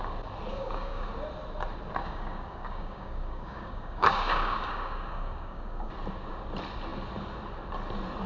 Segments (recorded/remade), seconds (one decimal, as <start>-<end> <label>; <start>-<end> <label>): 0.0-0.5 recorded; 0.5-1.1 remade; 1.1-2.0 recorded; 2.0-5.9 remade; 5.9-8.3 recorded